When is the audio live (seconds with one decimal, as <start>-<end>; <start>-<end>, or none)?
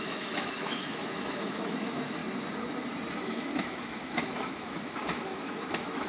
2.2-3.1